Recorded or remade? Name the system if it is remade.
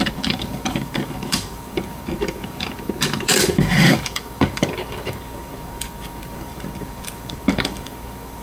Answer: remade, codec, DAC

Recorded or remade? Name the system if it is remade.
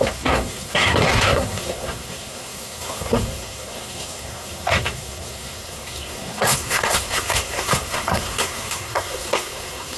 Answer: remade, codec, SNAC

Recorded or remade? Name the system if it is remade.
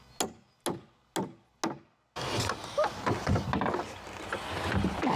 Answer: recorded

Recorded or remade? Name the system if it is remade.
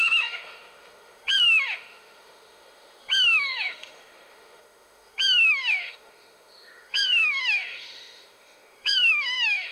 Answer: remade, autoencoder, DAC-VAE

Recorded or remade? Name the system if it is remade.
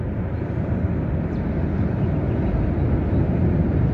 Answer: recorded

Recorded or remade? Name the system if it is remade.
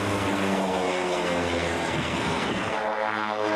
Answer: remade, codec, SNAC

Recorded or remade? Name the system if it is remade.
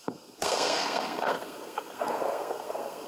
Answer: remade, codec, SNAC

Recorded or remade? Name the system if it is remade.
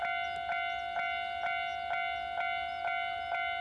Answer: recorded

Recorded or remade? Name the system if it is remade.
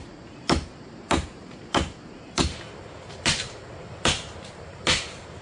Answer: recorded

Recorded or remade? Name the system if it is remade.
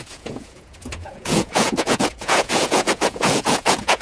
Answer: remade, vocoder, Vocos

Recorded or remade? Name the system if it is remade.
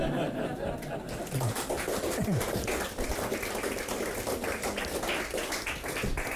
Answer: recorded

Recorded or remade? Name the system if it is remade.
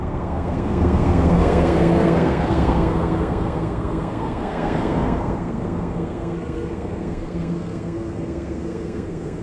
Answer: remade, codec, SNAC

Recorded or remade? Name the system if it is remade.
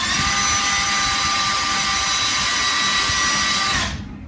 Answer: recorded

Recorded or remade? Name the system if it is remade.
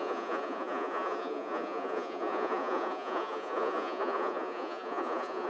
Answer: remade, vocoder, Vocos